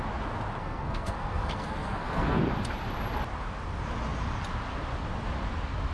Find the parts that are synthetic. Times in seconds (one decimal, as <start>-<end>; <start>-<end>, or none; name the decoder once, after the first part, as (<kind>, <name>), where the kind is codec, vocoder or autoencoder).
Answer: 0.6-2.4 (codec, SNAC)